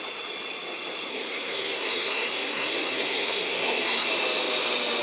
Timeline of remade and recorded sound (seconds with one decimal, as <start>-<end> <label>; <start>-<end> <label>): 0.0-1.1 recorded; 1.1-4.1 remade; 4.1-5.0 recorded